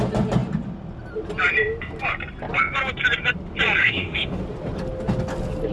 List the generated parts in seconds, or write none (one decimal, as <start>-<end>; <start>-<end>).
3.8-4.4